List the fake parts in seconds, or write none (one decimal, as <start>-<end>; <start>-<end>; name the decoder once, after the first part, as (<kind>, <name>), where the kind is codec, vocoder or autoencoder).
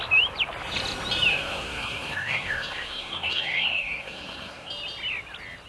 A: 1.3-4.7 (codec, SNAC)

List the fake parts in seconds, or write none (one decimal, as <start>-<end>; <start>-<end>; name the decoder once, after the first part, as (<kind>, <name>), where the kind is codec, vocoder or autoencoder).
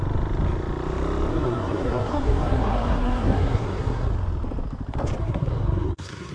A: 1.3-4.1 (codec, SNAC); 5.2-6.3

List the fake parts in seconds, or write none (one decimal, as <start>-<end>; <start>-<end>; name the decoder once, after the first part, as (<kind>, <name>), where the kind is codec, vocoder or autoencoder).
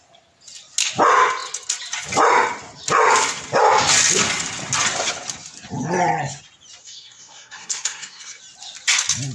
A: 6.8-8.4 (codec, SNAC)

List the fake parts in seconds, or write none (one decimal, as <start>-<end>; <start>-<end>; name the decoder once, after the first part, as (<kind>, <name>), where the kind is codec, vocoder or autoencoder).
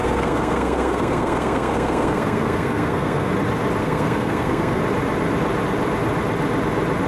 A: 0.0-3.3 (codec, SNAC); 3.8-4.8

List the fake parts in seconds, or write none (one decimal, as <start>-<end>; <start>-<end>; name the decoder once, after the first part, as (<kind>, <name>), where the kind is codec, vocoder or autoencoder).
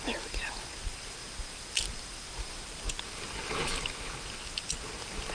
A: none